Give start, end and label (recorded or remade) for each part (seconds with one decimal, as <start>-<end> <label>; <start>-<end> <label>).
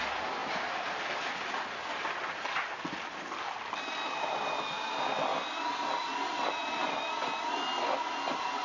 0.0-5.3 remade; 5.3-5.9 recorded; 5.9-6.8 remade; 6.8-8.6 recorded